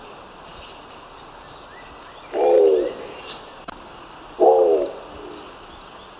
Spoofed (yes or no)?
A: no